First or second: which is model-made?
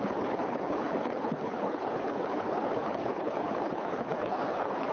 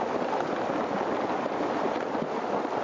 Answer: first